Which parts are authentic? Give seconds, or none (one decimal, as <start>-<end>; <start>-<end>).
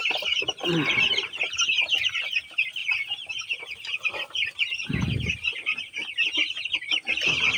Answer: 0.0-7.6